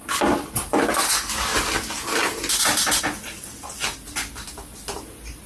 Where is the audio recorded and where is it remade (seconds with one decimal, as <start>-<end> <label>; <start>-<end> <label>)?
0.0-5.5 recorded